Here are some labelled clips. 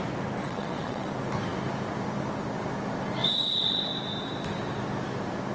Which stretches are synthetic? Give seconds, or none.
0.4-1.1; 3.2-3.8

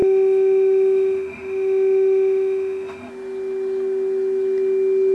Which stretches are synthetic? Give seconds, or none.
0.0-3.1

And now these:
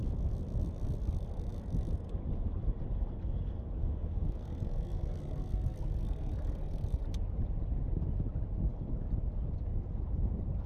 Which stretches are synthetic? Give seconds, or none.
3.8-7.0